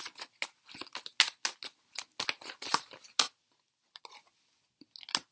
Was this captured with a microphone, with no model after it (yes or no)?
yes